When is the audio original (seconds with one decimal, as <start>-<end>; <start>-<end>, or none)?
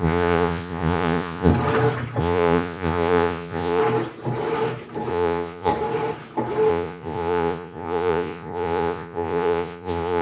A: 1.5-2.2; 3.8-5.1; 5.7-6.7